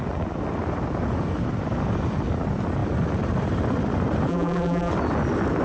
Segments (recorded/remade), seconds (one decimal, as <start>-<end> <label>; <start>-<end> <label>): 0.0-4.3 recorded; 4.3-4.9 remade; 4.9-5.6 recorded